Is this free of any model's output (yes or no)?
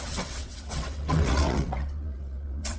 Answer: no